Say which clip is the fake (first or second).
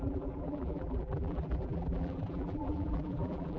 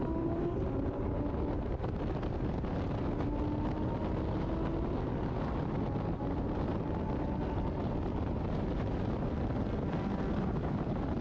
first